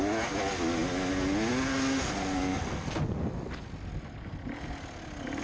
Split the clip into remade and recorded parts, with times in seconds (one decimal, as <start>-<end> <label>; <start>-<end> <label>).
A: 0.0-5.4 recorded